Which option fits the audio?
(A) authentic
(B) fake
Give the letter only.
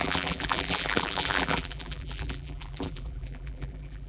B